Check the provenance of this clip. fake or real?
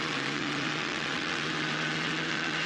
fake